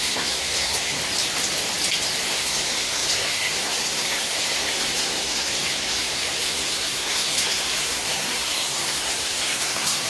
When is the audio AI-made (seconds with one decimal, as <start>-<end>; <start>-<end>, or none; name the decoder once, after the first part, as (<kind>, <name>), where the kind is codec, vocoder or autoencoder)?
0.0-1.0 (codec, SNAC); 2.3-10.1